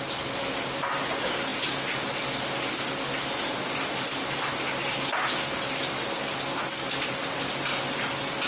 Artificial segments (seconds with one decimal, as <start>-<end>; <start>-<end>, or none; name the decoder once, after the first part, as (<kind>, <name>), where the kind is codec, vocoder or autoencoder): none